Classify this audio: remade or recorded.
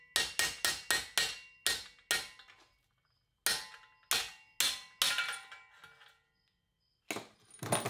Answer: recorded